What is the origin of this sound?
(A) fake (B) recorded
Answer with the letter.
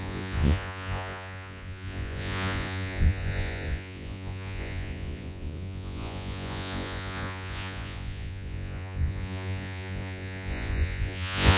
A